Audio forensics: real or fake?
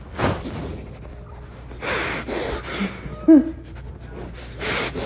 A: real